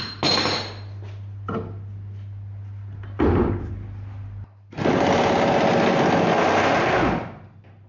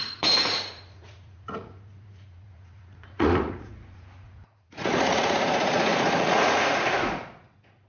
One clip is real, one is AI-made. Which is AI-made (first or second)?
second